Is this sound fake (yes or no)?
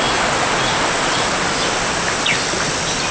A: no